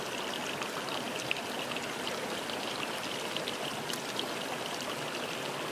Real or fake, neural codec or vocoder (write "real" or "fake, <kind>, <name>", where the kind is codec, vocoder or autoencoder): real